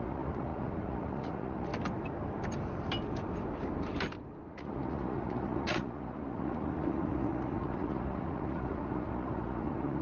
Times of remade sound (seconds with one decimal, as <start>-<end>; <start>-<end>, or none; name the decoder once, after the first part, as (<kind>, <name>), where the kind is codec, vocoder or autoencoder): 0.0-1.7 (vocoder, Vocos); 4.5-10.0